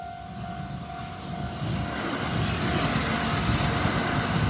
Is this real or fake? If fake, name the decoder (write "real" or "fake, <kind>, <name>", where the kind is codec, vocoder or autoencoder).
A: real